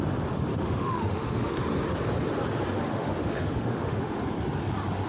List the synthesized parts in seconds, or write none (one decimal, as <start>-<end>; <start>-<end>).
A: 0.5-1.6; 2.9-4.2